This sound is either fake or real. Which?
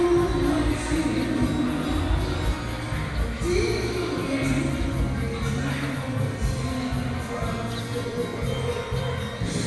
real